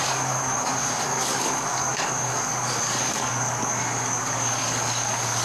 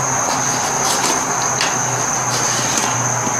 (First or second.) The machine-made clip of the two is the first